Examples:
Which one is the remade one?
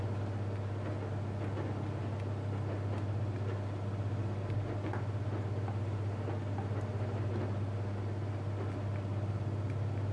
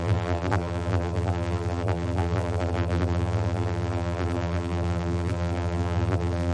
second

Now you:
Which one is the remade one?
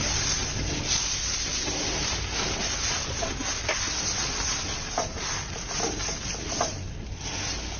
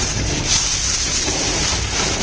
second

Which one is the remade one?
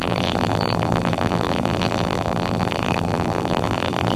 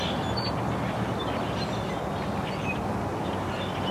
first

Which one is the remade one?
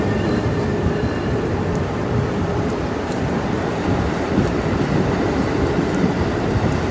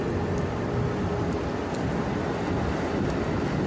first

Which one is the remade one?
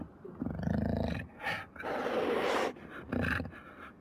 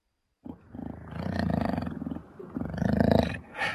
second